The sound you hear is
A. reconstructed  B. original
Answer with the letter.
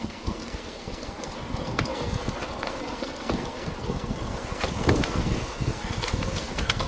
A